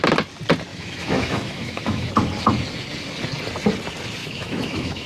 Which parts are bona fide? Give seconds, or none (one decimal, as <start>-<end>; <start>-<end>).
0.0-0.7; 2.1-4.2